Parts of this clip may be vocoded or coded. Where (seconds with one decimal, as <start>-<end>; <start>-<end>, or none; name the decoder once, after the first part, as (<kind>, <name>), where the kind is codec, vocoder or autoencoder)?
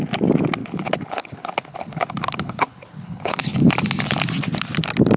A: 0.6-3.7 (codec, HILCodec)